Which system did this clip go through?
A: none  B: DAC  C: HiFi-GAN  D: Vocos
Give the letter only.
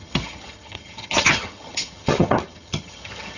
C